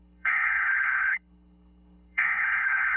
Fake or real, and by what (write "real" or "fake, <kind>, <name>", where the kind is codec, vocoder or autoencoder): fake, codec, HILCodec